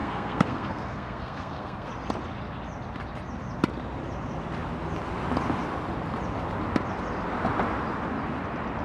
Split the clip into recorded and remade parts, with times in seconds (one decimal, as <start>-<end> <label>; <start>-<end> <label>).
0.0-1.9 remade; 1.9-8.8 recorded